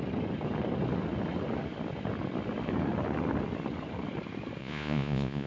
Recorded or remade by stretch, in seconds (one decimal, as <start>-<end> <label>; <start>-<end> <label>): 0.0-4.6 recorded; 4.6-5.5 remade